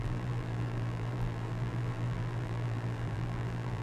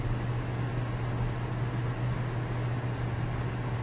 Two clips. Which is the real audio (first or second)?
second